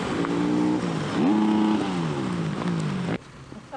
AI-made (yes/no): no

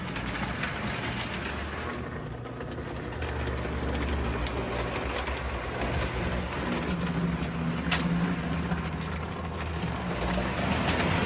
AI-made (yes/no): no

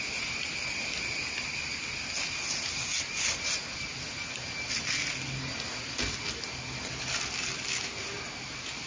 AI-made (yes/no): no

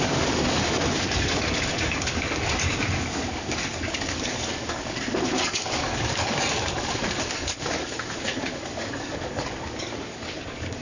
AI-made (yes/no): yes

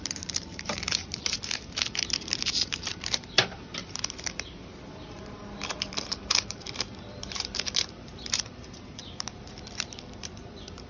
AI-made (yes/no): yes